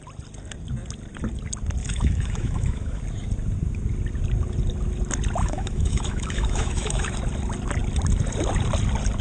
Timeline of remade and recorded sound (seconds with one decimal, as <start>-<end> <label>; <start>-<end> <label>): 0.0-1.8 recorded; 1.8-3.0 remade; 3.0-5.4 recorded; 5.4-7.2 remade; 7.2-9.2 recorded